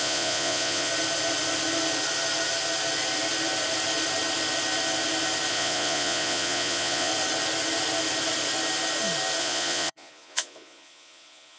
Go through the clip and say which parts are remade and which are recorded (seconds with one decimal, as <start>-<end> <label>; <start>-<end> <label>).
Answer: 0.0-0.9 remade; 0.9-5.5 recorded; 5.5-7.1 remade; 7.1-9.4 recorded; 9.4-11.6 remade